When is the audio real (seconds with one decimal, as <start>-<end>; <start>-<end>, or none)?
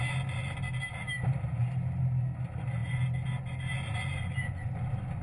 0.0-5.2